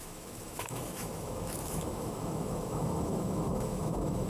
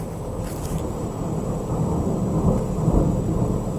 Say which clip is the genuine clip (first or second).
second